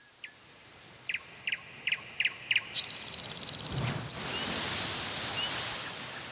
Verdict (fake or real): real